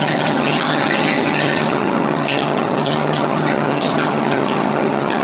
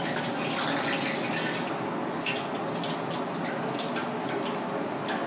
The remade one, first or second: first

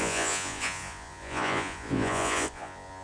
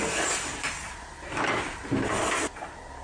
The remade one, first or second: first